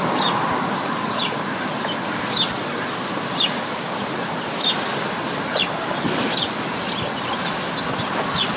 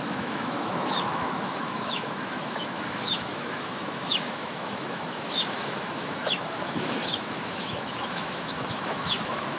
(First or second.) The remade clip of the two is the second